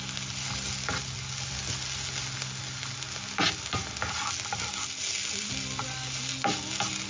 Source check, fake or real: real